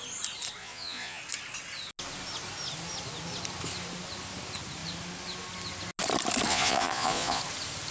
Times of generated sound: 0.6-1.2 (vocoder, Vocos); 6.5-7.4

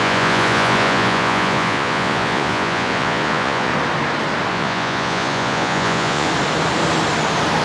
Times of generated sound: 0.0-3.7 (vocoder, Vocos); 4.5-6.3

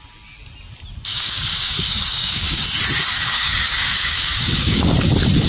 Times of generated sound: 1.1-2.7 (codec, DAC); 3.1-4.8

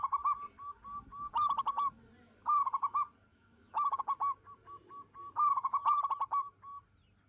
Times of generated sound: 3.3-4.0 (autoencoder, DAC-VAE)

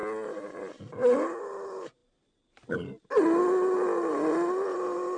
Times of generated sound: none

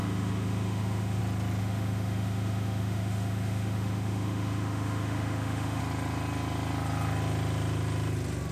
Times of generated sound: 0.0-1.2 (autoencoder, DAC-VAE); 1.6-5.8